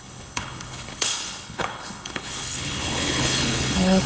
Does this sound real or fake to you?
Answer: fake